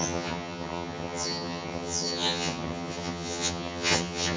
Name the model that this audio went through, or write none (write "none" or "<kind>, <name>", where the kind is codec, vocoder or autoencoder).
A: vocoder, HiFi-GAN